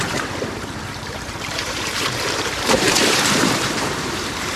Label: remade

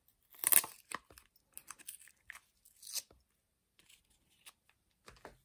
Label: recorded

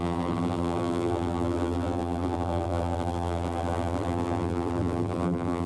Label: remade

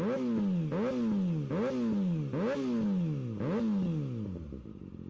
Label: recorded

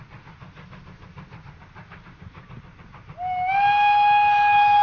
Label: recorded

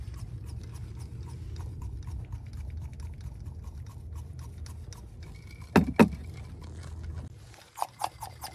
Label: recorded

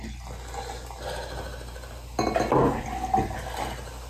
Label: recorded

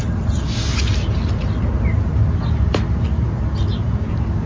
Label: recorded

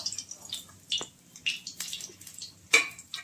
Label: recorded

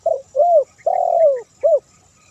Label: remade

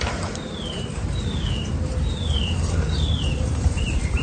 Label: remade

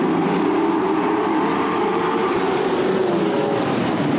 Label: remade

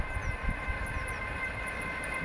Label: recorded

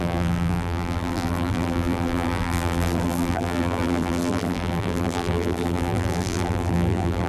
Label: remade